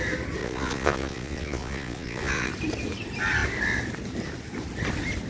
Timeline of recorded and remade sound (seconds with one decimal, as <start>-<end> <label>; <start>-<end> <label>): 0.0-0.4 recorded; 0.4-2.5 remade; 2.5-5.3 recorded